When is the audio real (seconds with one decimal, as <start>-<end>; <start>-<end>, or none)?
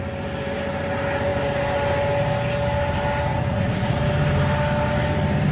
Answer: 0.0-3.3; 4.0-5.5